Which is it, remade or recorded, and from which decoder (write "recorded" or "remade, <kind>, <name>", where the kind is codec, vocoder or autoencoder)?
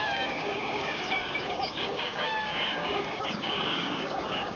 remade, codec, DAC